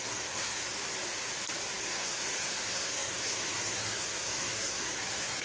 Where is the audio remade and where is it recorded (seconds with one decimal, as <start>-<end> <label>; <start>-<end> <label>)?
0.0-0.6 remade; 0.6-1.8 recorded; 1.8-5.4 remade